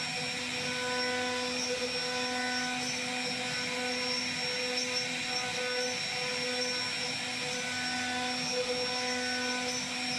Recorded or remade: recorded